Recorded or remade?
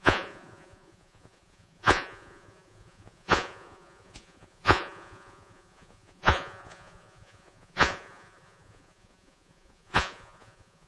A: remade